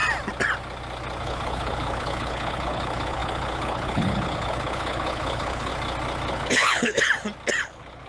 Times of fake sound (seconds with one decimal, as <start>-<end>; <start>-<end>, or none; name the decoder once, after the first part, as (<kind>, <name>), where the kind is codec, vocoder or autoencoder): 1.2-5.7 (codec, HILCodec); 6.3-7.1; 7.6-8.1

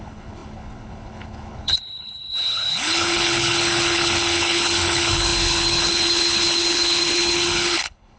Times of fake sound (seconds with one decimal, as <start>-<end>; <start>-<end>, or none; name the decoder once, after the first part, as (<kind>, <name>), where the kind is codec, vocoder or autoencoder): 0.0-8.2 (codec, HILCodec)

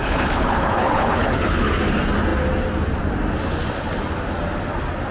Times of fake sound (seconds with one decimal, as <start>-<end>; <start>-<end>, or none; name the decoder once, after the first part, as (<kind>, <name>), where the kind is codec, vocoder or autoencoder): 0.0-1.7 (codec, HILCodec)

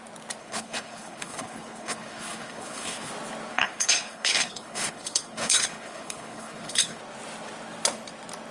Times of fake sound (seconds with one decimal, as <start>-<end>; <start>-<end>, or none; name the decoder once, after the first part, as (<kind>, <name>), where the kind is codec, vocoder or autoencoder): 0.4-3.1 (codec, HILCodec); 3.5-7.0

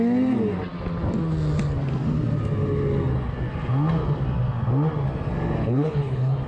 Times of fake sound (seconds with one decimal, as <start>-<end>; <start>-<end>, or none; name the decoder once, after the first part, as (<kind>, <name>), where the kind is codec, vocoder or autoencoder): 5.6-6.5 (codec, HILCodec)

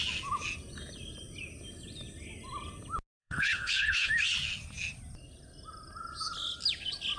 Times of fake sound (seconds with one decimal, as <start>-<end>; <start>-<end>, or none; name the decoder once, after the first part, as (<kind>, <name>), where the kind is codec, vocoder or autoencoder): 3.2-4.1 (codec, HILCodec)

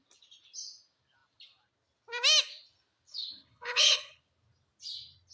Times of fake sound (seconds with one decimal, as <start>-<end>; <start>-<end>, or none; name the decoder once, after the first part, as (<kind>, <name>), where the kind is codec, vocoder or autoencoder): 3.1-4.2 (codec, HILCodec)

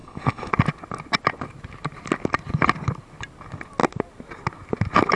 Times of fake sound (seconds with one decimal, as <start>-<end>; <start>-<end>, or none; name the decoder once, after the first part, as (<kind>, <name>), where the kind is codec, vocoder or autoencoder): 0.0-0.5 (codec, HILCodec)